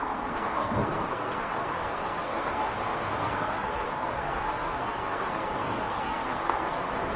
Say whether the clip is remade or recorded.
remade